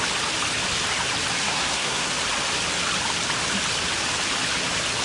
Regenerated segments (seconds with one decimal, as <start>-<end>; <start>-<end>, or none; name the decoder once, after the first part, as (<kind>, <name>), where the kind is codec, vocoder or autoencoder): 1.4-2.1 (codec, SNAC)